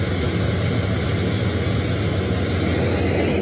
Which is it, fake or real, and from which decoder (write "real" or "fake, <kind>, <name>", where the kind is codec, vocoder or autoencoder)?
real